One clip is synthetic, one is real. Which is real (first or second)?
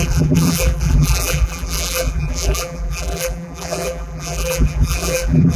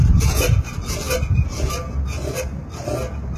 second